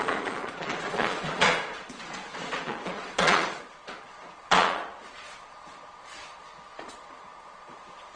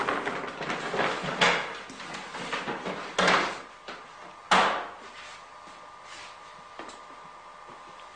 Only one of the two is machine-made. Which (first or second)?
first